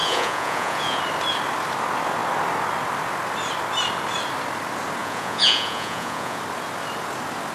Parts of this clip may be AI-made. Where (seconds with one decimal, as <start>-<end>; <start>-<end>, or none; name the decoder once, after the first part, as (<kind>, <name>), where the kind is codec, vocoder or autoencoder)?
0.0-1.0 (vocoder, Vocos); 5.0-6.4